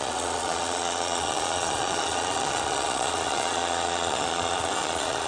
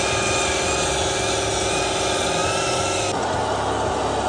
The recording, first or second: second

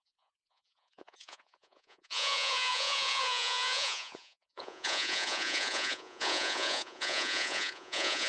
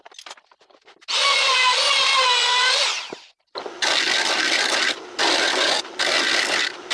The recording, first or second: second